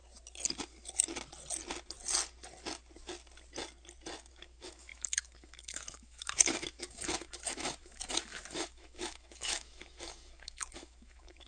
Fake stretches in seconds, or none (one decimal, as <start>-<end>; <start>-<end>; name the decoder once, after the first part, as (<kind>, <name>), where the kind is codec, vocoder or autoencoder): 4.3-11.5 (autoencoder, DAC-VAE)